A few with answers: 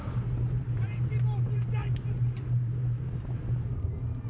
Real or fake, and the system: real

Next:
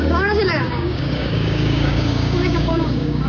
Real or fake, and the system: fake, codec, DAC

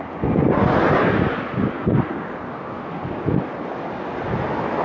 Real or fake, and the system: real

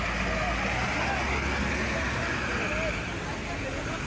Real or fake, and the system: real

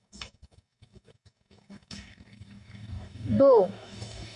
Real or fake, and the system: fake, codec, DAC